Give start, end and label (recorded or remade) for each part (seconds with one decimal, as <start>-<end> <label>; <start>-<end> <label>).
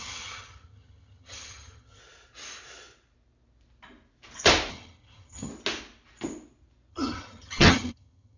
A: 0.0-2.0 remade; 2.0-4.7 recorded; 4.7-5.5 remade; 5.5-6.9 recorded; 6.9-8.4 remade